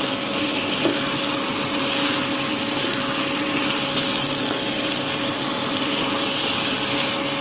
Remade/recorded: recorded